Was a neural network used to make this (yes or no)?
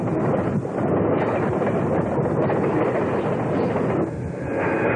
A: no